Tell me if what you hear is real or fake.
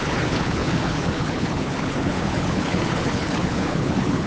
fake